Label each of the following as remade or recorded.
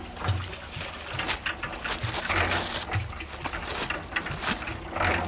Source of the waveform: recorded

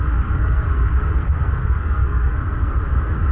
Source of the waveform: remade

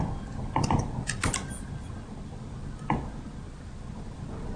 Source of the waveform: recorded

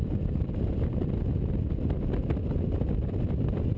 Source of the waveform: recorded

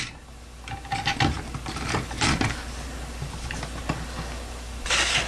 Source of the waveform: recorded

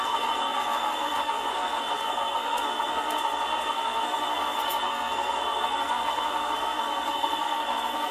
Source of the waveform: remade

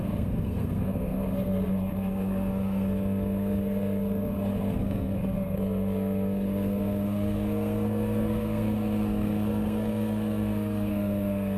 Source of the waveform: remade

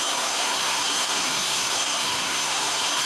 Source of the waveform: remade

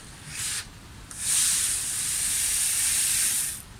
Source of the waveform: recorded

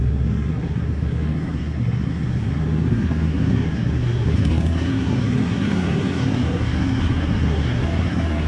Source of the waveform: remade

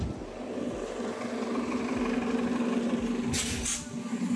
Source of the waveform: recorded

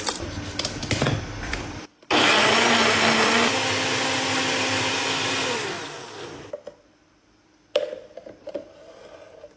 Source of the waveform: recorded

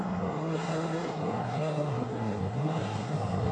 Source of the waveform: remade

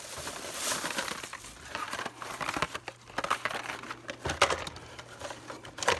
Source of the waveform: recorded